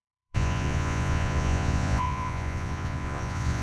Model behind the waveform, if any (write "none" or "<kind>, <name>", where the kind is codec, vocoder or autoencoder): vocoder, Vocos